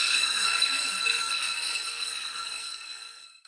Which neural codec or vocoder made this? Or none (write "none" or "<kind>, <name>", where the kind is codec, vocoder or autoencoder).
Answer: codec, SNAC